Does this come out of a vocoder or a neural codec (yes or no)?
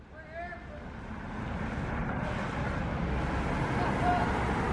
no